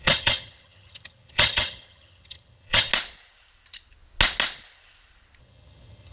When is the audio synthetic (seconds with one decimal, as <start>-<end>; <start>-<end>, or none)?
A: 0.0-2.9; 5.4-6.1